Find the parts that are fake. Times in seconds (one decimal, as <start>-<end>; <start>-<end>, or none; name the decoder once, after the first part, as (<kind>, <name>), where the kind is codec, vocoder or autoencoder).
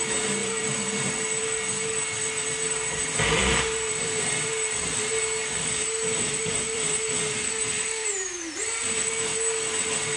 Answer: 0.4-1.4 (vocoder, BigVGAN v2); 3.4-5.0; 5.4-7.5; 8.0-9.0